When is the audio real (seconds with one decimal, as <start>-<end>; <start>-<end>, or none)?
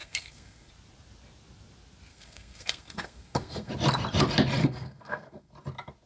0.7-2.1; 3.7-4.6; 5.5-6.1